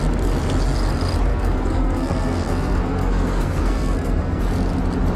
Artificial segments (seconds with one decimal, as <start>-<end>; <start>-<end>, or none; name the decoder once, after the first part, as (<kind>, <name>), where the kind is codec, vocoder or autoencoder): 1.3-4.4 (codec, SNAC)